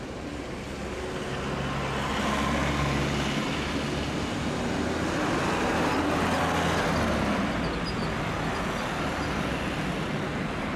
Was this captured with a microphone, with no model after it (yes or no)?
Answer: yes